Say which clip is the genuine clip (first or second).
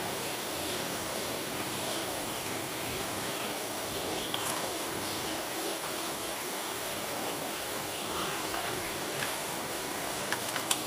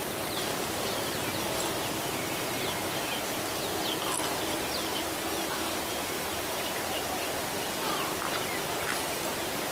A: second